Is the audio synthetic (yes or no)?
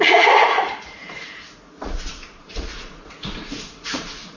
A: yes